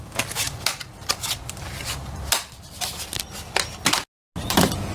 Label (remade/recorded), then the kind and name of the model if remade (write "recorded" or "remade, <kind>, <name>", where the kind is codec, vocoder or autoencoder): recorded